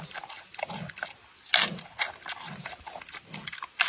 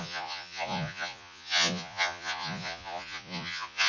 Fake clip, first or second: second